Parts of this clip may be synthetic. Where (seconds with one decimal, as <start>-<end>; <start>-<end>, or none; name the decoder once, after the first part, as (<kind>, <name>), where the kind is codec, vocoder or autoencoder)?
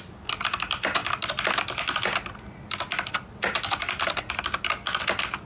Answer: none